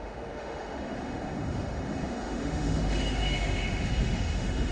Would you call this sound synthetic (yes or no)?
yes